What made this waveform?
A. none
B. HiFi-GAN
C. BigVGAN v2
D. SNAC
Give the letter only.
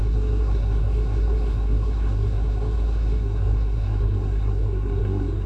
D